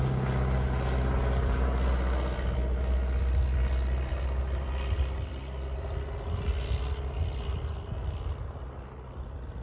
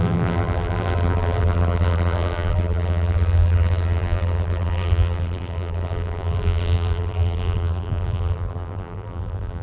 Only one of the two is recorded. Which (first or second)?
first